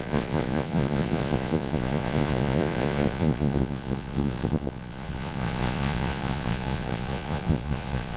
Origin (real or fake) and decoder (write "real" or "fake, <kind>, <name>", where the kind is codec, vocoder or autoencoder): fake, vocoder, Vocos